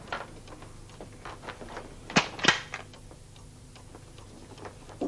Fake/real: real